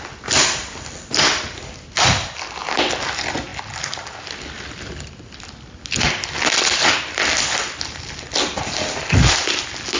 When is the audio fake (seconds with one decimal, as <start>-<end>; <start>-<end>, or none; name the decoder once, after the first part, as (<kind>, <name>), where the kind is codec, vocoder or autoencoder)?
none